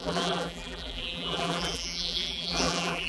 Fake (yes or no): yes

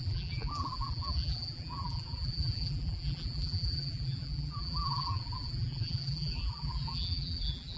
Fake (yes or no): yes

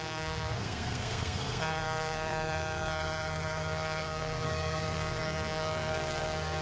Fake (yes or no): yes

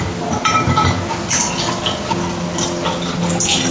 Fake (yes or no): no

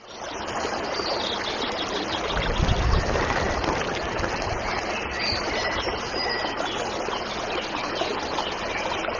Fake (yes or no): no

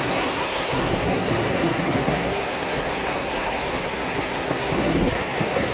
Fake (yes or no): yes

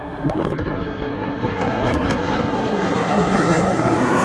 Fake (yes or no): yes